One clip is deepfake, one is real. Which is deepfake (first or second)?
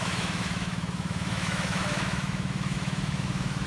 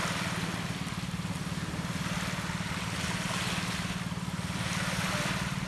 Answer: first